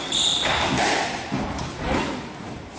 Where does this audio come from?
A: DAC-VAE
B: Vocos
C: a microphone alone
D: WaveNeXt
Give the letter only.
C